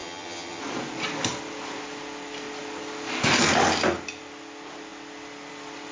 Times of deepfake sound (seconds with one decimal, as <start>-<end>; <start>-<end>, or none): 0.0-0.6